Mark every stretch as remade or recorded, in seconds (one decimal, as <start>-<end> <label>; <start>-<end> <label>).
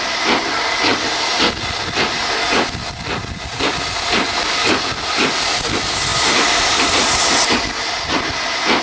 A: 0.0-8.8 recorded